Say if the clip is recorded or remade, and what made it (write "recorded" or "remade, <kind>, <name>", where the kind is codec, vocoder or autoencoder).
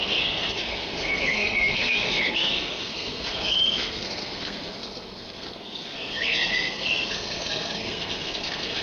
remade, codec, SNAC